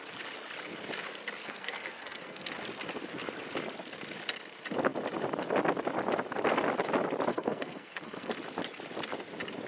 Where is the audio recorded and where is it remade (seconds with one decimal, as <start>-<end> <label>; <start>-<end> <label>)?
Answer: 0.0-1.4 recorded; 1.4-2.5 remade; 2.5-7.3 recorded; 7.3-8.3 remade; 8.3-9.7 recorded